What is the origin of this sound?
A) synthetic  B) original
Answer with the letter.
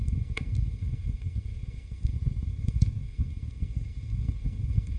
A